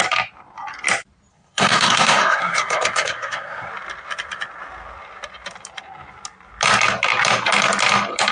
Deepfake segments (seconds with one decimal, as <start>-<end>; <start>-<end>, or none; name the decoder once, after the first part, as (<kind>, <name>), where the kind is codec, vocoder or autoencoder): 1.3-3.7 (codec, SNAC)